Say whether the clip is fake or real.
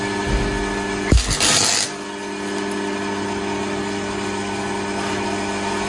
real